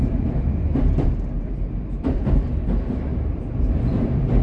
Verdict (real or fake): fake